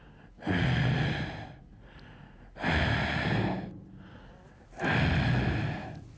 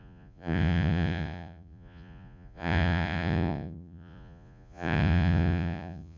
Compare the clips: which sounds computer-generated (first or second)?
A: second